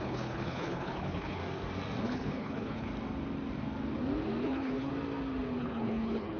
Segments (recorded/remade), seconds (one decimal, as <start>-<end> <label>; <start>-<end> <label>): 0.0-1.4 remade; 1.4-2.0 recorded; 2.0-2.9 remade; 2.9-4.4 recorded; 4.4-4.9 remade; 4.9-5.6 recorded; 5.6-6.4 remade